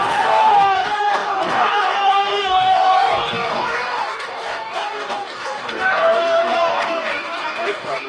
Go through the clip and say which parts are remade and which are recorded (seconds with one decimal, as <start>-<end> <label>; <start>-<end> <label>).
0.0-8.1 remade